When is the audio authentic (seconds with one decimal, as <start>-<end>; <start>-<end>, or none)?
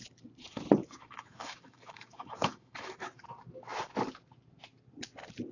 0.0-0.8; 3.2-5.5